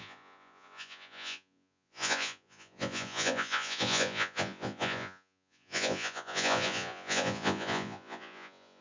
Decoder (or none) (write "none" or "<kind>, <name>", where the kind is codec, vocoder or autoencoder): vocoder, Vocos